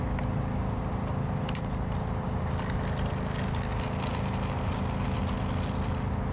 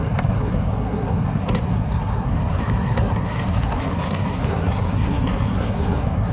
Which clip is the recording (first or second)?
first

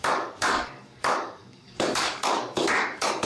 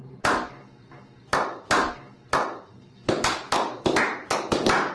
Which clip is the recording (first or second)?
second